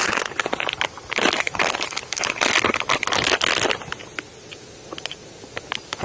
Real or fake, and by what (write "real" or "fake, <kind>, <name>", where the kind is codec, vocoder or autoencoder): real